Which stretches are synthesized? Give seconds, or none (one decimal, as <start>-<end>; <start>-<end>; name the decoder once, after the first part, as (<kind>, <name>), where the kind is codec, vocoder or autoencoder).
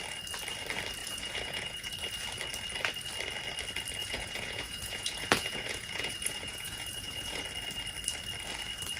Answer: 1.0-1.9 (vocoder, Vocos); 4.0-7.4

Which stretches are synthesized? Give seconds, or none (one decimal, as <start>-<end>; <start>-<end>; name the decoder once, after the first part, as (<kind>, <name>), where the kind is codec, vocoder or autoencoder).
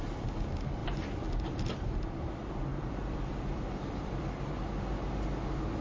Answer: 2.7-4.5 (vocoder, BigVGAN v2)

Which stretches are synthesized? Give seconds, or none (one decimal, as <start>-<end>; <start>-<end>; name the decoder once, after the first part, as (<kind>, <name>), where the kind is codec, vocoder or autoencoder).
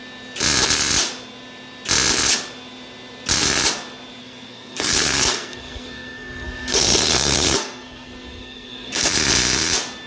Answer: 4.2-8.9 (codec, SNAC)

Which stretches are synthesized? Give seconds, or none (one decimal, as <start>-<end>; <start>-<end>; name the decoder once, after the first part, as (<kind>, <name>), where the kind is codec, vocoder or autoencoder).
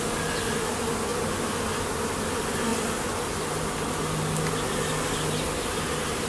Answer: none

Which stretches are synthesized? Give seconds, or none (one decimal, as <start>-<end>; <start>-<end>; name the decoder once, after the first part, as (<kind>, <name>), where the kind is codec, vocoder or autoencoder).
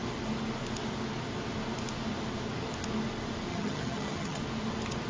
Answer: 3.5-4.4 (vocoder, HiFi-GAN)